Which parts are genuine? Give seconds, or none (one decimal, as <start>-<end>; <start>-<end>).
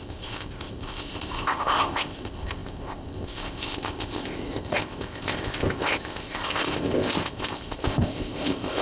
none